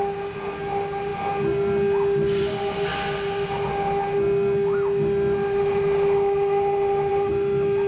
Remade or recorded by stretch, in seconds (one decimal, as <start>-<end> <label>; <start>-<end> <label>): 0.0-7.9 recorded